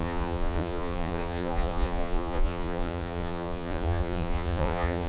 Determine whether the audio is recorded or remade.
remade